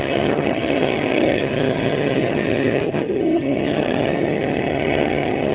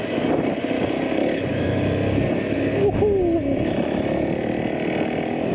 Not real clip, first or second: first